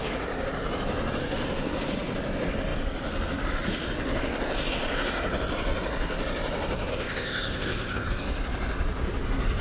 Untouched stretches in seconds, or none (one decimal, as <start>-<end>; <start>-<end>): 0.0-6.9; 8.1-9.6